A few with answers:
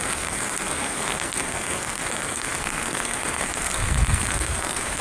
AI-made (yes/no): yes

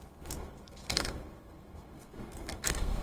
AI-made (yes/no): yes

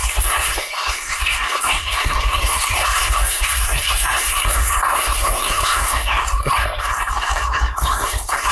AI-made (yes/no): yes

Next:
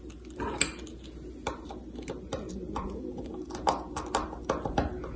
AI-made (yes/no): no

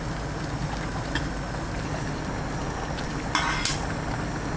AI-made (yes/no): no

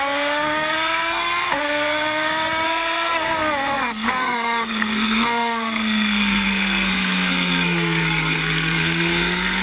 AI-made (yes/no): yes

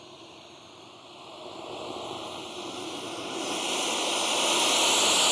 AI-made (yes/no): no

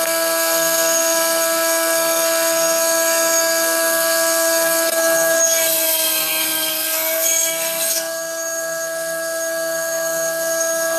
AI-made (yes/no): yes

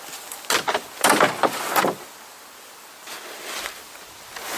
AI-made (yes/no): no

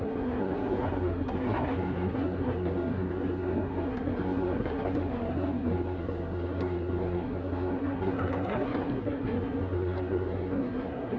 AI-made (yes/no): yes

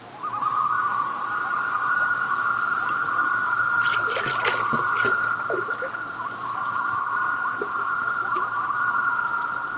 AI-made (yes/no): no